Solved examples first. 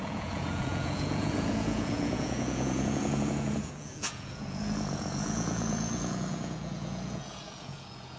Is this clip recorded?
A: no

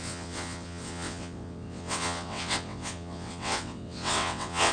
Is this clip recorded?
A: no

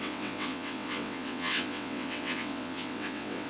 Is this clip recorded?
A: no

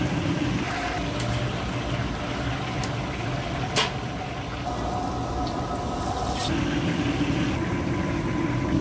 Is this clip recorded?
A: yes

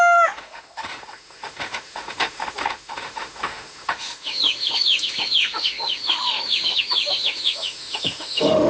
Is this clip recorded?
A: no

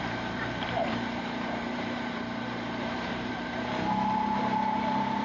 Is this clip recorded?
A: no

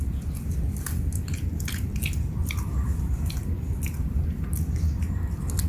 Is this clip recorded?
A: yes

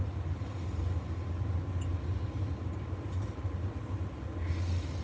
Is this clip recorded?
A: yes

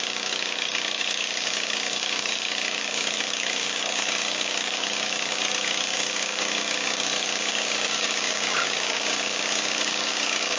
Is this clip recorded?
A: no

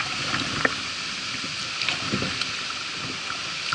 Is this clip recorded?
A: yes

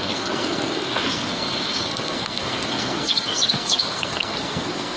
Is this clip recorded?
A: no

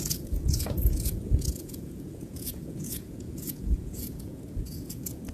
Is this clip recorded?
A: no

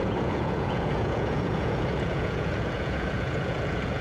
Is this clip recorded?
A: no